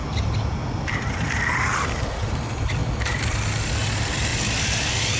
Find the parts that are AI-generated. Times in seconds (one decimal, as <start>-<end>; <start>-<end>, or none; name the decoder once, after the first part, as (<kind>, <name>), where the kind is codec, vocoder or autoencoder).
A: 0.0-1.4 (vocoder, BigVGAN v2); 4.3-5.2